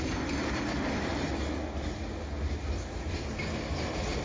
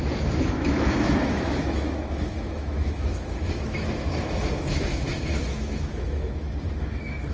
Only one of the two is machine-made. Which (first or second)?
second